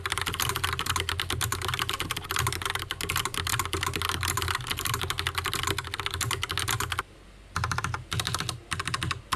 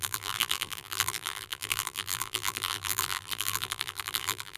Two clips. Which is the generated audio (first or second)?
second